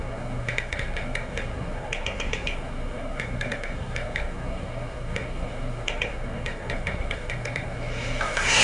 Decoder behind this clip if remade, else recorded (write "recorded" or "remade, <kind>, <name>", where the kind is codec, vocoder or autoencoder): remade, codec, SNAC